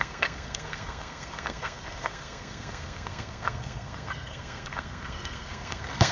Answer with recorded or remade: remade